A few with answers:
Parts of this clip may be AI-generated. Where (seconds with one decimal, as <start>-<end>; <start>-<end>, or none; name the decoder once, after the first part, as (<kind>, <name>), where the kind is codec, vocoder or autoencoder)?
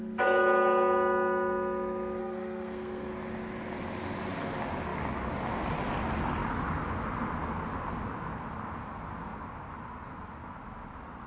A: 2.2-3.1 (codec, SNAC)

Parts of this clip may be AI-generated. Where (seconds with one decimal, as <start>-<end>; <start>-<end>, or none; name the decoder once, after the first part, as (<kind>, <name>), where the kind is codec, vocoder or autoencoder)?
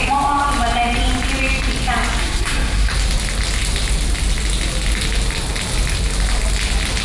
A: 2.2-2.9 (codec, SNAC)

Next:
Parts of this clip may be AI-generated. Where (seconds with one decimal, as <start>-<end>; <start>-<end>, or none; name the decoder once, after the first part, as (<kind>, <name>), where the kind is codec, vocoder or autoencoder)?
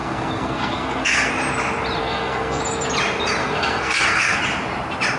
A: 0.0-1.3 (codec, SNAC); 2.0-2.6; 3.4-4.4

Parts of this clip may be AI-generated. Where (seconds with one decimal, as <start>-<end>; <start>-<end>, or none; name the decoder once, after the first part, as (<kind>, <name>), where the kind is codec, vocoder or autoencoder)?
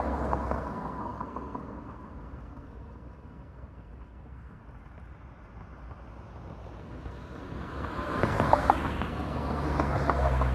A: 0.0-4.6 (codec, SNAC); 6.8-10.5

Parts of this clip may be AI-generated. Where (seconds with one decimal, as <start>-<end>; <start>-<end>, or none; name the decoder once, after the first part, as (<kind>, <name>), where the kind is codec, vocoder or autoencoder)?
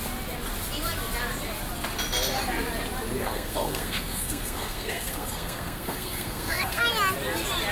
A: 3.2-6.9 (codec, SNAC)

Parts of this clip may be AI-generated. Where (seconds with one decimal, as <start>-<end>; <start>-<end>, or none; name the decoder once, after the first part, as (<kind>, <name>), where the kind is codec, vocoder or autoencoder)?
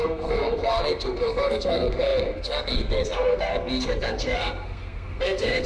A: 0.0-5.7 (codec, SNAC)